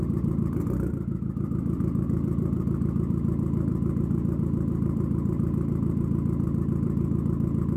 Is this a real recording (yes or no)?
no